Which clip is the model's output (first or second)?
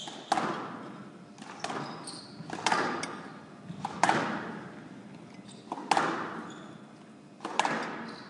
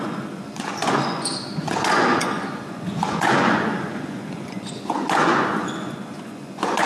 second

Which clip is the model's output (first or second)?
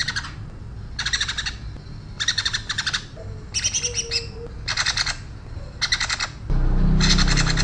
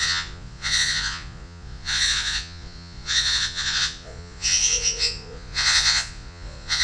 second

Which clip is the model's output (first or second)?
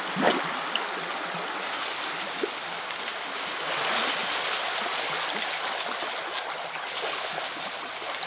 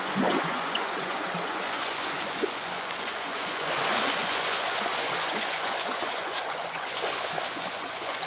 second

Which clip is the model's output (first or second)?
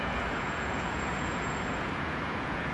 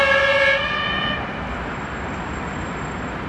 first